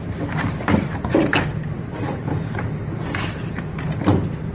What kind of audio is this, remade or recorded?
recorded